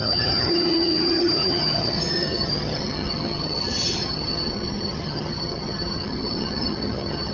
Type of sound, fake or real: fake